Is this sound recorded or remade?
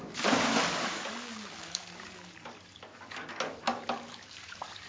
remade